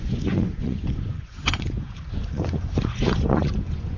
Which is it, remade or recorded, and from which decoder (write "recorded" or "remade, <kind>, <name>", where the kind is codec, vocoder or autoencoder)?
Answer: remade, vocoder, Vocos